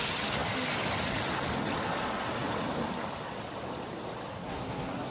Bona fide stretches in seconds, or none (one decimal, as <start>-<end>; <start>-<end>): 0.0-4.3